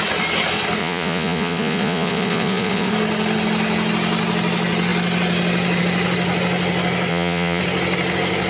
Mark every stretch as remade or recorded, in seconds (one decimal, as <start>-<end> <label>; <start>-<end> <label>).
0.0-0.8 recorded; 0.8-2.9 remade; 2.9-7.1 recorded; 7.1-7.6 remade; 7.6-8.5 recorded